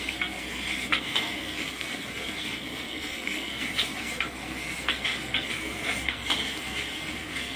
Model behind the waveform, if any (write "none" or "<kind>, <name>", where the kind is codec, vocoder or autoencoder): codec, SNAC